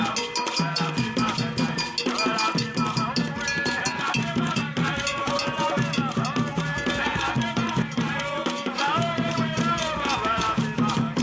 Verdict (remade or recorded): recorded